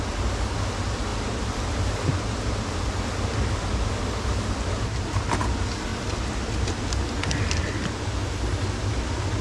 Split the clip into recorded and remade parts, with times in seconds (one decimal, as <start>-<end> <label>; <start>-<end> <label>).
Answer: 0.0-9.4 recorded